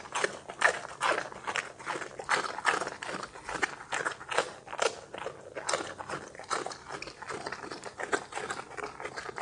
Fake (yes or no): no